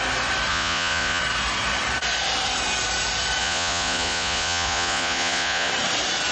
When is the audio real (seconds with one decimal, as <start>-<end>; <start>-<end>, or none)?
0.0-0.5; 1.2-3.4; 5.7-6.3